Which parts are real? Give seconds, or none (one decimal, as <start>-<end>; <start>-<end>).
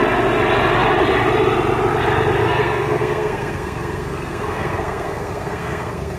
0.0-2.4